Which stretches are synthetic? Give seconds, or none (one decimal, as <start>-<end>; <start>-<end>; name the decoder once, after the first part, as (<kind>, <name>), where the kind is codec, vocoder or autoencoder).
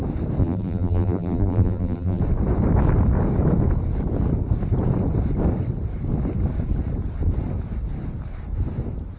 0.4-2.2 (vocoder, BigVGAN v2)